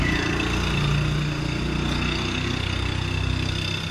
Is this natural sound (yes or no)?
yes